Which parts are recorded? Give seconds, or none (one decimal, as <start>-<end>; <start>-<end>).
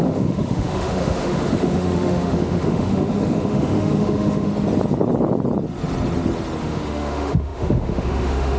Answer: 4.5-6.6